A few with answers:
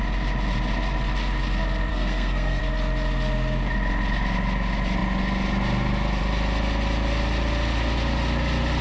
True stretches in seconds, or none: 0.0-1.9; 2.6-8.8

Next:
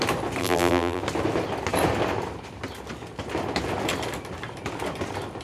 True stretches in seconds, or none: 0.0-0.4; 1.0-5.4